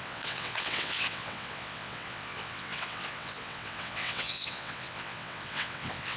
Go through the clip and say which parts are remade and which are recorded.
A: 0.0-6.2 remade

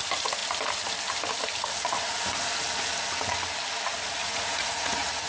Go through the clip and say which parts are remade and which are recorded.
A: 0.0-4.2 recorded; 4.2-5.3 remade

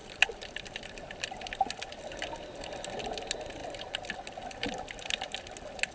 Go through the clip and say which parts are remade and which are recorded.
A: 0.0-5.9 recorded

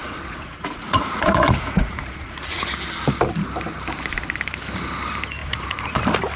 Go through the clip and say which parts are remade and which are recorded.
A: 0.0-2.6 remade; 2.6-5.4 recorded; 5.4-6.0 remade; 6.0-6.4 recorded